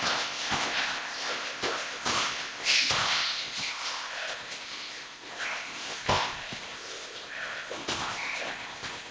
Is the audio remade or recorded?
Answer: remade